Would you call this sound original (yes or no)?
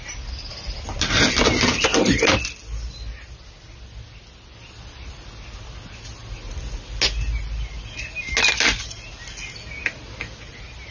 yes